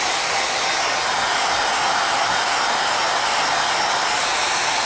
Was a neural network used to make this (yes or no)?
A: no